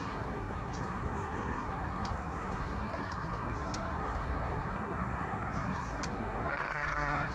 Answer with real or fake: fake